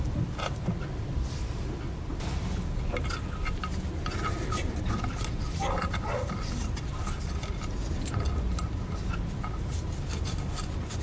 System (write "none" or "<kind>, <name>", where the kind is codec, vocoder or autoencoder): none